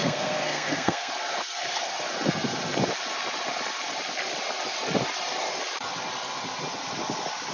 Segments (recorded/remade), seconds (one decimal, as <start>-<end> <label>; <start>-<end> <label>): 0.0-1.1 remade; 1.1-7.5 recorded